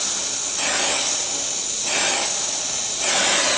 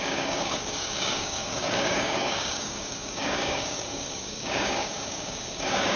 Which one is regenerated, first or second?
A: second